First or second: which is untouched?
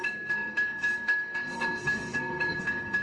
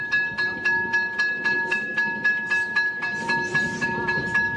second